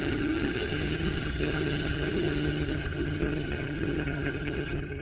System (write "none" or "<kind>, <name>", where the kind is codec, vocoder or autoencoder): vocoder, HiFi-GAN